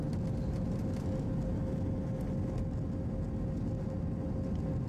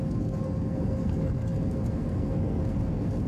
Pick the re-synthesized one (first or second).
second